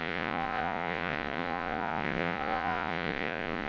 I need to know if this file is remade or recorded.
remade